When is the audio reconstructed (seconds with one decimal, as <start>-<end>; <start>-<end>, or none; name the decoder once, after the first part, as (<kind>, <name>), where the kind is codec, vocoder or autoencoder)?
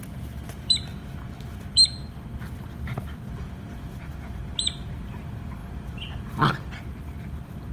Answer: none